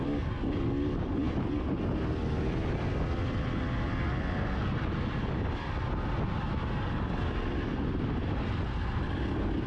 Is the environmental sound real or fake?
real